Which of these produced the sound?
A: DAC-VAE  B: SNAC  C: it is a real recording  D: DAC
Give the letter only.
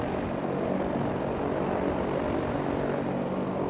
C